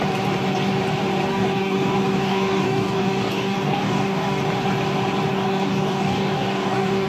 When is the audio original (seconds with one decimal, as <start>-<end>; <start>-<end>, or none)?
0.0-1.3; 4.4-5.3